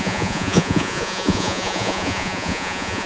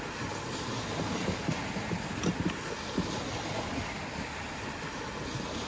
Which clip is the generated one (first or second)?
first